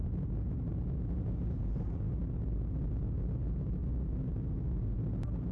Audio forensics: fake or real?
real